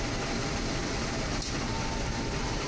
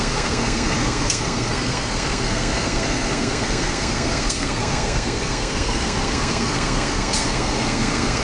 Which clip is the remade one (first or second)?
second